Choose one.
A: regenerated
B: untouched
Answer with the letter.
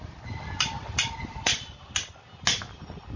B